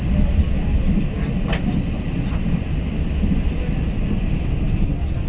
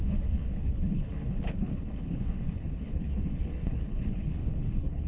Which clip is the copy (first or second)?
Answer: second